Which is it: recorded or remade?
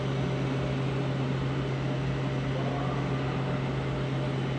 recorded